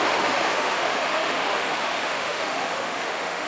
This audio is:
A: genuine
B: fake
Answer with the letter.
B